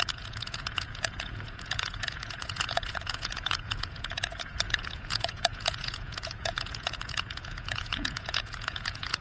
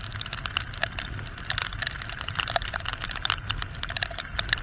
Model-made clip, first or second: first